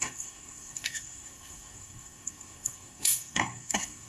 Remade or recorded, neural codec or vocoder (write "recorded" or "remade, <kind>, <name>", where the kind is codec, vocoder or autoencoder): remade, codec, SNAC